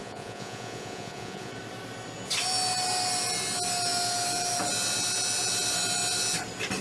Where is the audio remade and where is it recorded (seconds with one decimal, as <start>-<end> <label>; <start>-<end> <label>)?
0.0-1.5 remade; 1.5-6.8 recorded